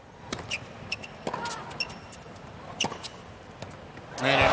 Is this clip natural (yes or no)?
yes